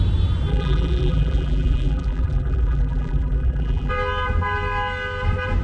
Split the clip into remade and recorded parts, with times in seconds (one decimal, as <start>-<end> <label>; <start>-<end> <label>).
0.0-0.5 recorded; 0.5-3.9 remade; 3.9-5.6 recorded